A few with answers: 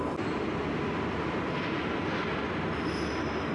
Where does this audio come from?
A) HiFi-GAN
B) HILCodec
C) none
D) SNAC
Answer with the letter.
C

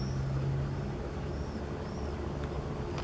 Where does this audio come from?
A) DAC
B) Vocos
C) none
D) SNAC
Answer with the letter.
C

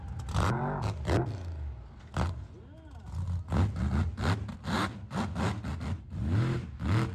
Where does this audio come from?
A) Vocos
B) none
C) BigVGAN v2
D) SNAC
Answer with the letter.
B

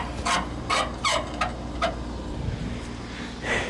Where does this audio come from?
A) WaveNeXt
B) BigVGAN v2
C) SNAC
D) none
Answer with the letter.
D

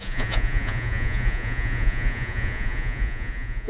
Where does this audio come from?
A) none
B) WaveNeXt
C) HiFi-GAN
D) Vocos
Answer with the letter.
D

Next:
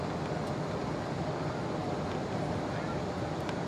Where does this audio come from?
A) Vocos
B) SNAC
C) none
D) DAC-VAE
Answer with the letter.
C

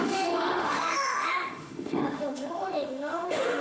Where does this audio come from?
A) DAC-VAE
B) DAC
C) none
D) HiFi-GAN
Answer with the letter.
A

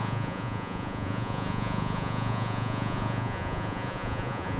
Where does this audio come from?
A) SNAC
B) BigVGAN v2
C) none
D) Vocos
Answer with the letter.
D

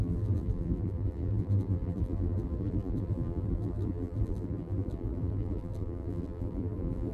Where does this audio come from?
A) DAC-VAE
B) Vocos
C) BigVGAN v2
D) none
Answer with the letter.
C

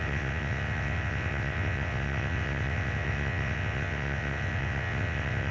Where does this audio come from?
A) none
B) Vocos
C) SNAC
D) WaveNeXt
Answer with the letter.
D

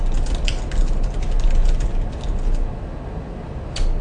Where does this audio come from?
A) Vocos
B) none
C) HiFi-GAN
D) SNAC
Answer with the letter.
B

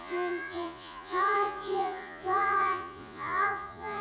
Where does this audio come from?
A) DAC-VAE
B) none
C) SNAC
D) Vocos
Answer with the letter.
D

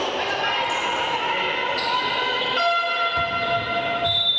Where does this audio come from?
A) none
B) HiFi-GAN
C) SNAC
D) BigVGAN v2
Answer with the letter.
A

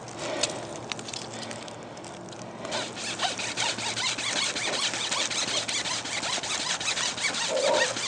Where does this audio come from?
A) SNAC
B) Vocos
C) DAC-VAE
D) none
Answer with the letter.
D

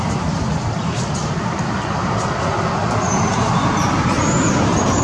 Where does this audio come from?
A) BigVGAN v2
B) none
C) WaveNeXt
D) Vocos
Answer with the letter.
B